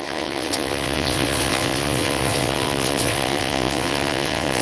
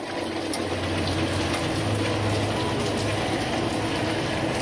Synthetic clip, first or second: first